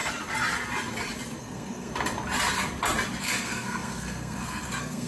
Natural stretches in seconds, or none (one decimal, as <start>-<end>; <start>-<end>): 0.0-1.4; 1.9-3.2